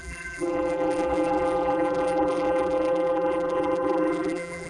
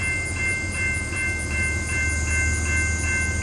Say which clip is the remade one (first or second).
first